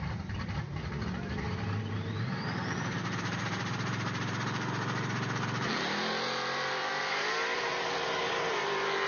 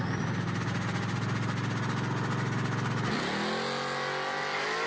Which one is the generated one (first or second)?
first